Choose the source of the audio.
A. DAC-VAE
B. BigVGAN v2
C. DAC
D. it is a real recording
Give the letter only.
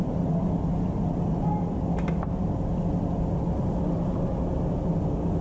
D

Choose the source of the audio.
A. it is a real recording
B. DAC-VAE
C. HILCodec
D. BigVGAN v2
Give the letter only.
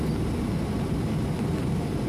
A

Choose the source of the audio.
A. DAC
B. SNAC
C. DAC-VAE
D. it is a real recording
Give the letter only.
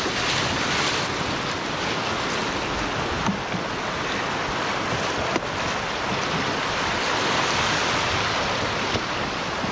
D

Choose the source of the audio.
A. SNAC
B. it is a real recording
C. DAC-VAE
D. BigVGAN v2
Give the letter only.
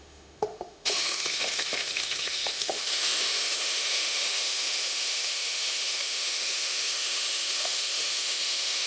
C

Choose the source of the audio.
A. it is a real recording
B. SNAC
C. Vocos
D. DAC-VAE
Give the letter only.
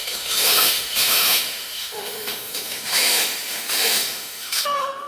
D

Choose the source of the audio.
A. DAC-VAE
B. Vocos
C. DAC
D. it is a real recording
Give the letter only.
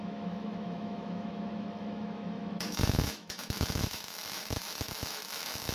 A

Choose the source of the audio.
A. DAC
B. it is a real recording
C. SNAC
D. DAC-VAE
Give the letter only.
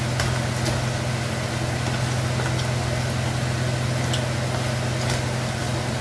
B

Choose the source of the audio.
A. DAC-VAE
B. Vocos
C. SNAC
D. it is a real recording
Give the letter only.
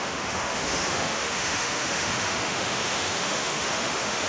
A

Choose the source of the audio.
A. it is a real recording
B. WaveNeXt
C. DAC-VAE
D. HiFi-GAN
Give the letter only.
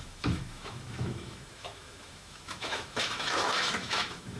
C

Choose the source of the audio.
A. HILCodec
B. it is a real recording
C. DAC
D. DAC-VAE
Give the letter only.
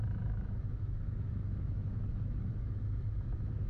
D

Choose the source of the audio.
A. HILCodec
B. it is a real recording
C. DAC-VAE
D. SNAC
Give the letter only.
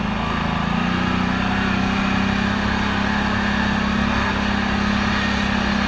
B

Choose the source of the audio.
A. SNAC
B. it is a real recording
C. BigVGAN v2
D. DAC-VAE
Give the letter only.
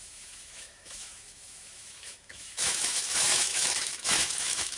D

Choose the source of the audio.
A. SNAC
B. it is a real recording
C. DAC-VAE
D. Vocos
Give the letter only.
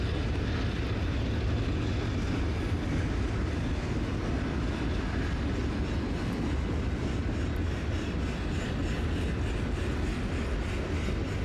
B